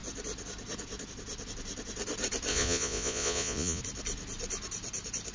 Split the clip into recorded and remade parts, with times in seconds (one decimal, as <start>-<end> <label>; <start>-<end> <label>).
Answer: 0.0-2.5 recorded; 2.5-3.8 remade; 3.8-5.3 recorded

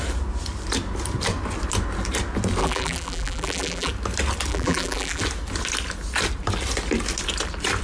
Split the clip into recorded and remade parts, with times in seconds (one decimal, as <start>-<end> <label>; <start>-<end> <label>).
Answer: 0.0-2.6 recorded; 2.6-3.9 remade; 3.9-4.5 recorded; 4.5-5.2 remade; 5.2-7.8 recorded